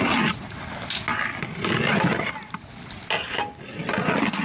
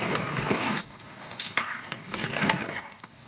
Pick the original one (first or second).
first